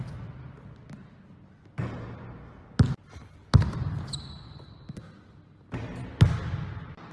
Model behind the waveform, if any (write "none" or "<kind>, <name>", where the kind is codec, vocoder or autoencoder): none